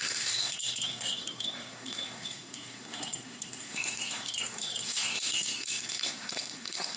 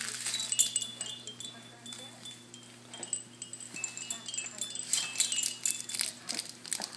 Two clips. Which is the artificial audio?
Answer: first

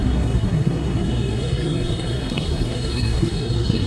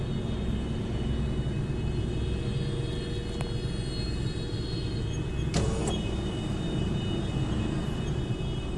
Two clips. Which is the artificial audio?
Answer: first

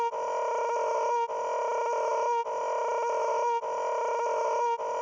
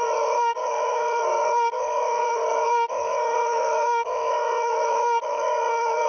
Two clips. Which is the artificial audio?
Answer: second